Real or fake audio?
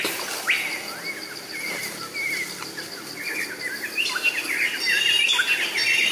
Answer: real